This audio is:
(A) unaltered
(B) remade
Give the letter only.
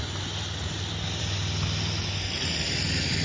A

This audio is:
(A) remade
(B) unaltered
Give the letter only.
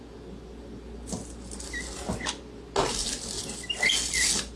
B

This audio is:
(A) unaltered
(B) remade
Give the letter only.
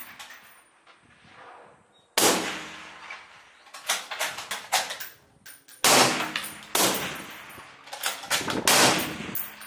A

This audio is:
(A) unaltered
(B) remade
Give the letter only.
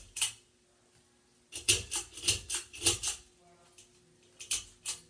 A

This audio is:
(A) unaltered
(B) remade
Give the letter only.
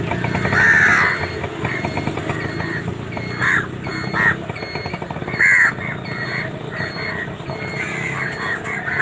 A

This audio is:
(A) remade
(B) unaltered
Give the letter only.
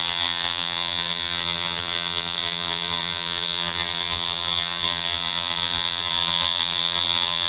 A